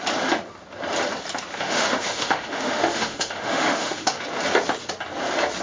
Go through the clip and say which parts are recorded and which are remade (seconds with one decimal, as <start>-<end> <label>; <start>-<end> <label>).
0.0-1.5 recorded; 1.5-4.2 remade; 4.2-5.6 recorded